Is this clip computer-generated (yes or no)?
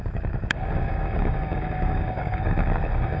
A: yes